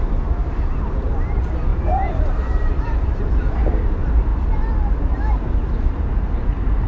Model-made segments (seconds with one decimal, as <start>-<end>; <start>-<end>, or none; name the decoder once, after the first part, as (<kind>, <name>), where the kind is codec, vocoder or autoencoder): 0.0-0.4 (vocoder, BigVGAN v2); 1.2-4.3; 5.9-6.9